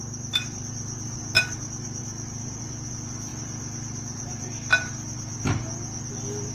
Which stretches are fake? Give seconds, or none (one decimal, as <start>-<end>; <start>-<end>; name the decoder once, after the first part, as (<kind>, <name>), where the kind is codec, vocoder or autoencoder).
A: none